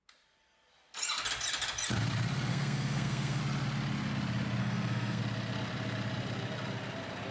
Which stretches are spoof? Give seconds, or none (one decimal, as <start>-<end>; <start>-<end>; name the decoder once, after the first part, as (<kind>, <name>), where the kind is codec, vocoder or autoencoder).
2.5-3.4 (codec, SNAC); 4.6-5.2